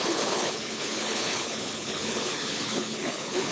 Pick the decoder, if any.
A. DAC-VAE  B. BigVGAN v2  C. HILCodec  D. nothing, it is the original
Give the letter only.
C